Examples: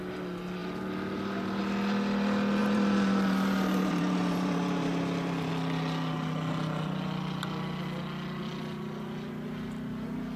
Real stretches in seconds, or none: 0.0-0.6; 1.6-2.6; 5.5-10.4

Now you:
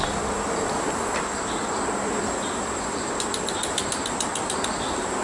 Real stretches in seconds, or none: 0.0-5.2

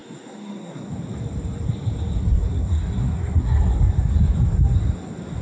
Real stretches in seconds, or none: 0.9-2.2; 3.7-5.4

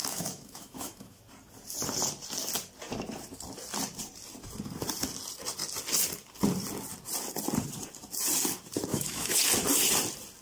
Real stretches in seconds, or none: 1.2-8.9; 9.4-10.4

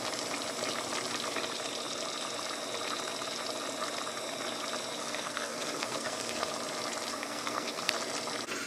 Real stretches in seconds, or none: 0.0-5.0; 6.5-7.1; 7.9-8.7

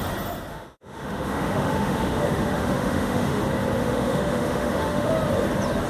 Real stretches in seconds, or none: 0.0-0.5; 3.4-3.8; 5.1-5.9